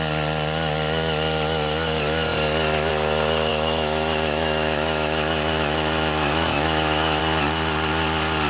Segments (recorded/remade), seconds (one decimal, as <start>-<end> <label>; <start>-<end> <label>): 0.0-3.5 recorded; 3.5-7.2 remade; 7.2-8.5 recorded